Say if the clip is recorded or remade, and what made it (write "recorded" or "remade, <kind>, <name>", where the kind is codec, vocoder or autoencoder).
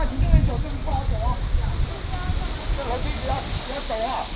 recorded